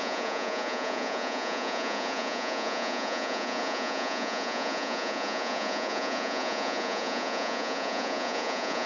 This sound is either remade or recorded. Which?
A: remade